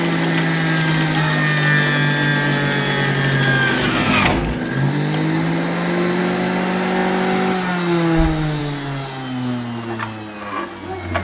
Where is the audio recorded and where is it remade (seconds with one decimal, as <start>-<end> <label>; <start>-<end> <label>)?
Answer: 0.0-11.2 recorded